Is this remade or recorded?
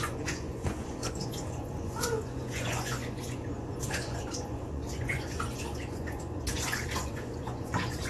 remade